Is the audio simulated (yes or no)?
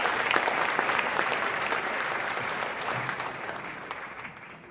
yes